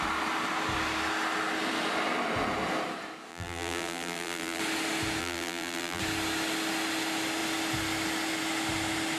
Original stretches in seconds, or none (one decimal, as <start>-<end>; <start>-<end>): 0.0-3.3; 4.6-5.2; 6.0-9.2

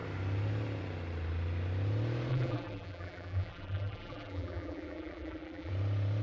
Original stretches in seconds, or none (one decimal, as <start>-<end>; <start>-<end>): 0.0-2.3; 5.7-6.2

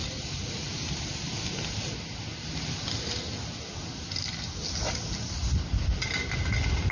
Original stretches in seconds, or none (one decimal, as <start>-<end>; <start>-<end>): 0.0-6.9

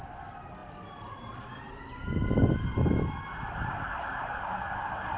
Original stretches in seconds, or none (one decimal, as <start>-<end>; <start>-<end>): 0.0-0.6; 1.8-5.2